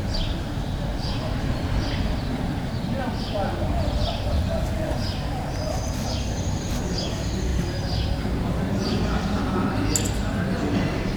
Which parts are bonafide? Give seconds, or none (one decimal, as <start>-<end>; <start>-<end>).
0.0-0.9; 5.9-7.5; 9.4-11.2